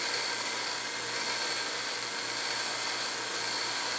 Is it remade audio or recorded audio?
recorded